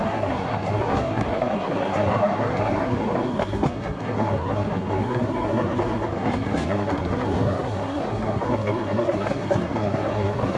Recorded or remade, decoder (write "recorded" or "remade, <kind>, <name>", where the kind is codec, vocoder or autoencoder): remade, codec, SNAC